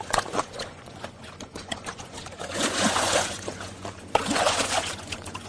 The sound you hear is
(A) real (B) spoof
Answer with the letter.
B